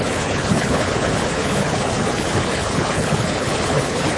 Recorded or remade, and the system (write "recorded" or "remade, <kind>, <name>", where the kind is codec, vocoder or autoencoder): remade, codec, HILCodec